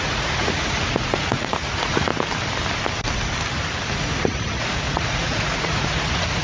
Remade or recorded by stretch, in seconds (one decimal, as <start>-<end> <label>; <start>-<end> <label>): 0.0-2.1 remade; 2.1-4.0 recorded; 4.0-6.4 remade